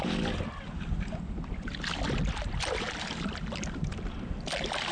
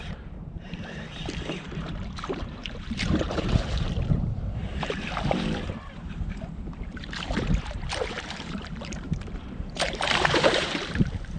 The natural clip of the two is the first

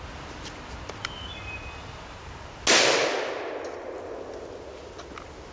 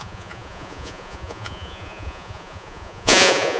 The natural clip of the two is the first